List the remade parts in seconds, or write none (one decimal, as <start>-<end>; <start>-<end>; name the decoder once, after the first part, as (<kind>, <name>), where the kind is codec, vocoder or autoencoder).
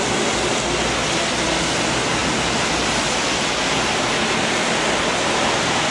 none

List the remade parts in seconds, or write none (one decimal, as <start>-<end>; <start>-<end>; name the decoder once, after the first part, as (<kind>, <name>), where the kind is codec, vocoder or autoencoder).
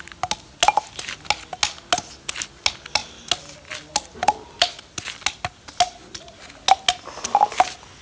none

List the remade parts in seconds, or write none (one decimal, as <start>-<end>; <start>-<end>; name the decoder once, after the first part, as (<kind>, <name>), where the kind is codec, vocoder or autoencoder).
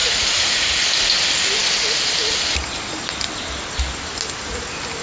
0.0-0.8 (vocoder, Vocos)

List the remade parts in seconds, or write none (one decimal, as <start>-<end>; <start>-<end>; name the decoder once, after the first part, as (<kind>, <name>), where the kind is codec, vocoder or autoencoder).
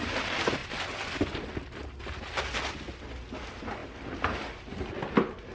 none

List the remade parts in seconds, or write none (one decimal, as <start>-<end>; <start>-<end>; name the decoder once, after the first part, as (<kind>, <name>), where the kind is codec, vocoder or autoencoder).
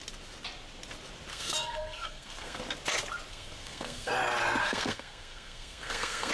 1.3-2.6 (codec, SNAC); 3.3-4.1; 4.6-6.3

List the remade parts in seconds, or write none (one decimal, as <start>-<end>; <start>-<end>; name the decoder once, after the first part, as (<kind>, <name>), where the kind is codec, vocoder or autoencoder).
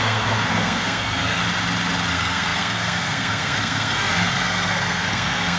0.0-1.4 (codec, SNAC); 2.1-5.6